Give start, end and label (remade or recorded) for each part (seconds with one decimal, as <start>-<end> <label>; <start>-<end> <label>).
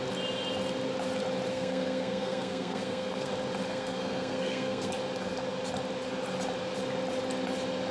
0.0-1.5 recorded; 1.5-3.3 remade; 3.3-3.7 recorded; 3.7-4.9 remade; 4.9-7.9 recorded